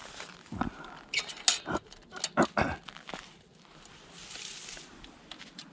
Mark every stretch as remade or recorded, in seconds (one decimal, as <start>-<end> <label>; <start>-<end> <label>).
0.0-5.7 recorded